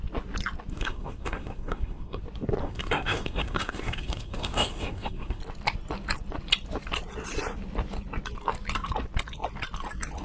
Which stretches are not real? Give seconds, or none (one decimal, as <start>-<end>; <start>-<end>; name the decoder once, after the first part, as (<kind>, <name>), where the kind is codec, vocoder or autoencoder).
0.7-2.2 (codec, SNAC); 2.6-5.4